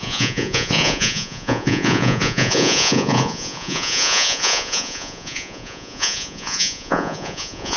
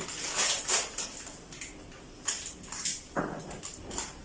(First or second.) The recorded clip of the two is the second